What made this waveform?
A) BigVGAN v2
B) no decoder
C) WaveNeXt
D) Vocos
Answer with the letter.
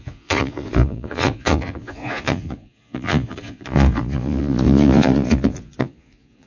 D